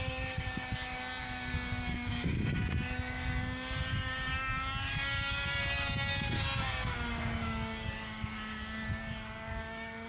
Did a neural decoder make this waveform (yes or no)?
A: yes